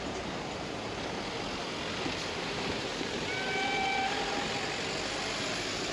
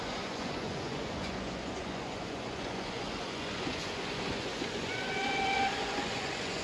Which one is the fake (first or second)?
second